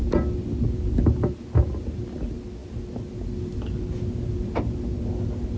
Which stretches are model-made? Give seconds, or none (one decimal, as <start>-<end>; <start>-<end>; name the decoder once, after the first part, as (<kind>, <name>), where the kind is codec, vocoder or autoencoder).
none